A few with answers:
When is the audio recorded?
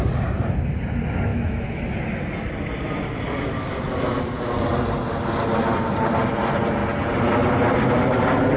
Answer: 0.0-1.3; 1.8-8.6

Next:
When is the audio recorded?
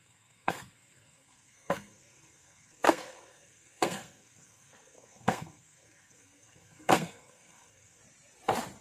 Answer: 8.0-8.8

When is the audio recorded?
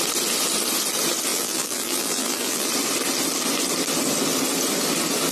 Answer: 0.0-1.3; 2.7-5.3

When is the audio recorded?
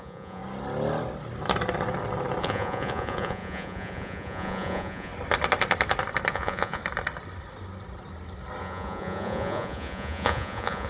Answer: 0.4-2.4; 5.1-6.3; 6.8-8.6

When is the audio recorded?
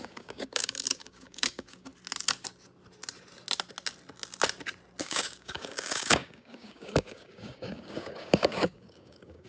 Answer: 1.9-5.0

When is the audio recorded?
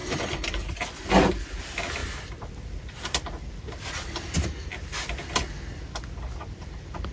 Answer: 1.1-7.1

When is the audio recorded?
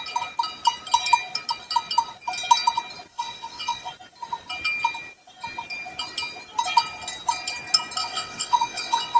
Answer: 0.0-3.1; 3.9-8.0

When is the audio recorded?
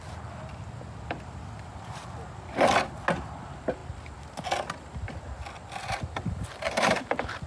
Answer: 0.0-1.7; 2.4-5.8